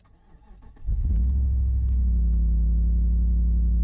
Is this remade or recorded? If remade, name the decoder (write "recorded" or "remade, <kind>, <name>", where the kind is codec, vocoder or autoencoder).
recorded